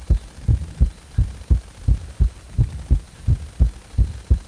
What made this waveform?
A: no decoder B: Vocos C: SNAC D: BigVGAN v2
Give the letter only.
A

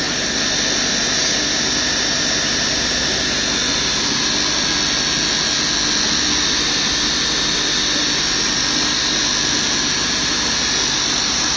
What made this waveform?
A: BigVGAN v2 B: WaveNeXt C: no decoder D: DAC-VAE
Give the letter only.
C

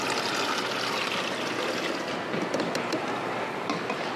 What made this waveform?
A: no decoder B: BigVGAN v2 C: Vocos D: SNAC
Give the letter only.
A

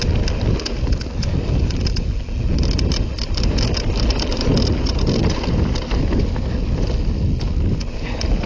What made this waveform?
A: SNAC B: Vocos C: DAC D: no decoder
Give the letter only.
D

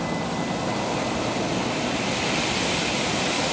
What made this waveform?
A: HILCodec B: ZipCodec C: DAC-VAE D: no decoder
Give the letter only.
D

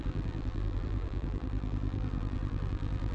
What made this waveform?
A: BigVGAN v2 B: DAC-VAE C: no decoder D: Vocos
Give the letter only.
A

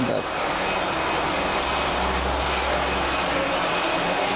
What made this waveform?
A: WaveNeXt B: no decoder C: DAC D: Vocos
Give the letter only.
B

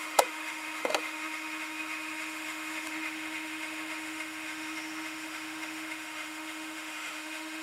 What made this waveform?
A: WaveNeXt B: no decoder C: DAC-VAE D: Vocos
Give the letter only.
C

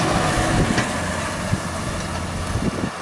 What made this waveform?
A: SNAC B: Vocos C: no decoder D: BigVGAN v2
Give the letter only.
C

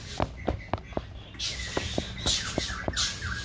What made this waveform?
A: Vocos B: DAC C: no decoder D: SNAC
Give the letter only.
C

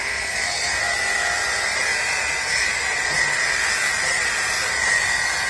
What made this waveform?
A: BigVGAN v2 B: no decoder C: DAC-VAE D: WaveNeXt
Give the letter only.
A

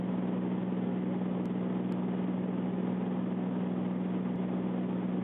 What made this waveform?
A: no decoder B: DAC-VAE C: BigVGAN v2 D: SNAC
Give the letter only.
A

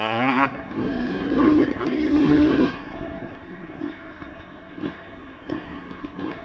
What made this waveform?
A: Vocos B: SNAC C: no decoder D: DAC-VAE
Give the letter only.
B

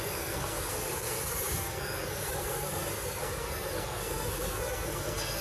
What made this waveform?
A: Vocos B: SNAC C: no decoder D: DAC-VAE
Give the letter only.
B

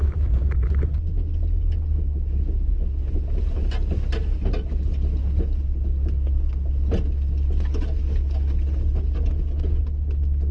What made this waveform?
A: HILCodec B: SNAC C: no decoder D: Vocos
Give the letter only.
C